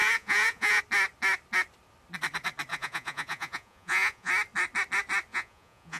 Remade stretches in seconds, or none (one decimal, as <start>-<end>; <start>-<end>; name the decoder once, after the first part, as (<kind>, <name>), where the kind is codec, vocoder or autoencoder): 0.0-0.8 (vocoder, Vocos); 2.7-4.3; 5.3-6.0

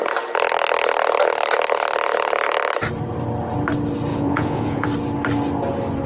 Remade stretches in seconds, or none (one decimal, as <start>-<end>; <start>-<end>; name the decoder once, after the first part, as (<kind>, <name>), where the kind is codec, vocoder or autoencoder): 4.1-4.9 (vocoder, Vocos)

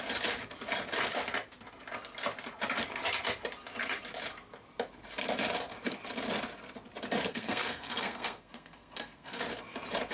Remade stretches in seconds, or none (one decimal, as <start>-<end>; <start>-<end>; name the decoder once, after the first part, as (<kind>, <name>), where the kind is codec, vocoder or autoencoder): 7.3-9.4 (codec, SNAC)